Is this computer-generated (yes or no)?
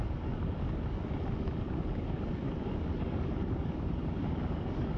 yes